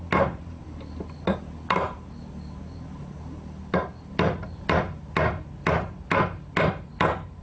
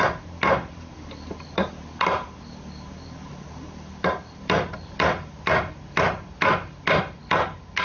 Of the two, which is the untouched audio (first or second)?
first